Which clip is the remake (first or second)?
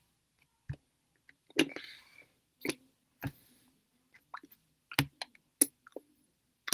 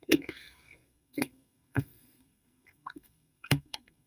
second